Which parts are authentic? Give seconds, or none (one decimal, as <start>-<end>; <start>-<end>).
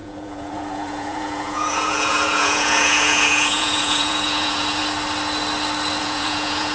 4.8-6.0